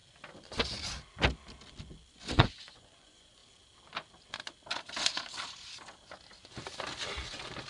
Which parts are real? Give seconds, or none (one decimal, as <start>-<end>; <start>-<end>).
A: 0.0-2.1; 3.4-7.7